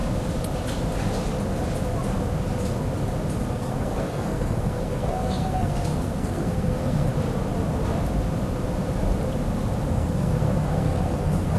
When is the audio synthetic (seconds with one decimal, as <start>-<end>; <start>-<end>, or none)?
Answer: 3.5-7.1; 9.9-11.6